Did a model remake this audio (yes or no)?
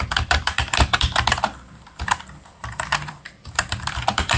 yes